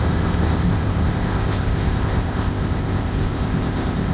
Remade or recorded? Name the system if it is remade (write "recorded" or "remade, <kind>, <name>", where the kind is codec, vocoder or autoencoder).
remade, codec, ZipCodec